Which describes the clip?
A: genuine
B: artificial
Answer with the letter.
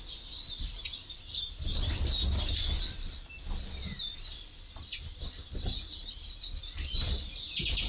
A